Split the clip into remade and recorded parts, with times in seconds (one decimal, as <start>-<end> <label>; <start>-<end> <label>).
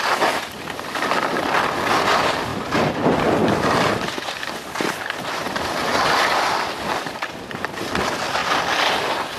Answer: 0.0-2.5 recorded; 2.5-3.3 remade; 3.3-8.4 recorded; 8.4-8.9 remade; 8.9-9.4 recorded